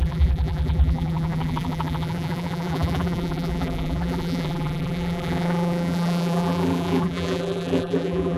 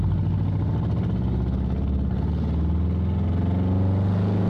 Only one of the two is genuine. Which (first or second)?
second